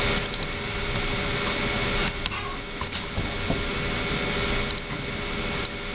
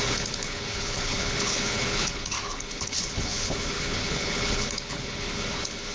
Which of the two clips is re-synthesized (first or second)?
second